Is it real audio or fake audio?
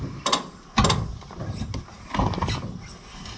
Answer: real